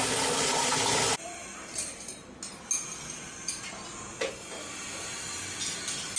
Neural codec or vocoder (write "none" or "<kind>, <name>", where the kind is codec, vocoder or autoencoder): none